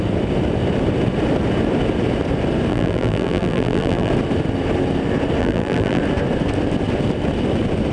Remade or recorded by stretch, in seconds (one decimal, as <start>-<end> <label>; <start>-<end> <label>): 0.0-2.7 recorded; 2.7-4.1 remade; 4.1-5.4 recorded; 5.4-6.0 remade; 6.0-7.9 recorded